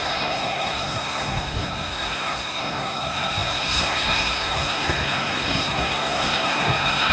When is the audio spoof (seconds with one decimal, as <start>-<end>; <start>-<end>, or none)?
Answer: 0.0-7.1